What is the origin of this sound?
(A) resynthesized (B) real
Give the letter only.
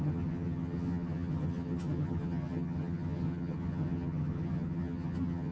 A